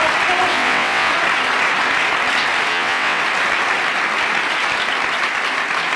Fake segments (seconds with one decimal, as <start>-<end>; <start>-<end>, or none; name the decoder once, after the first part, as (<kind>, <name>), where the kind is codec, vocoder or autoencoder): 0.5-1.1 (vocoder, WaveNeXt); 2.7-3.2